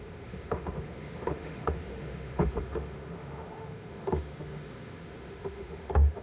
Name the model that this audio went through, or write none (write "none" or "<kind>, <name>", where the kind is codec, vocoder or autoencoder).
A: autoencoder, DAC-VAE